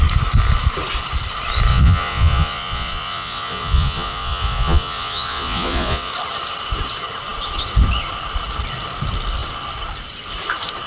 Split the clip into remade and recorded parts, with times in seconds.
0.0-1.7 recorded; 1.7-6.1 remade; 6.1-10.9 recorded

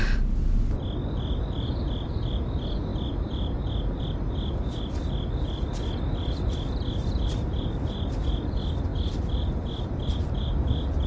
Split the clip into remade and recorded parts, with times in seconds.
0.0-11.1 recorded

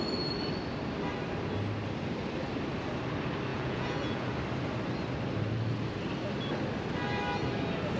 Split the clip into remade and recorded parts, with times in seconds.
0.0-3.5 recorded; 3.5-4.3 remade; 4.3-8.0 recorded

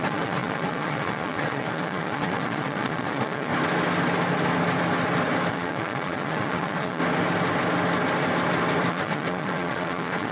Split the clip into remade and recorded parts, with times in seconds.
0.0-3.5 remade; 3.5-5.5 recorded; 5.5-7.0 remade; 7.0-8.9 recorded; 8.9-10.3 remade

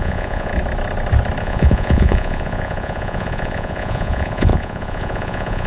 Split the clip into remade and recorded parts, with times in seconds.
0.0-0.5 remade; 0.5-1.4 recorded; 1.4-5.7 remade

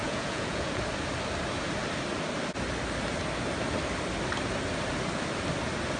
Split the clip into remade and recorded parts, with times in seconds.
0.0-0.7 remade; 0.7-6.0 recorded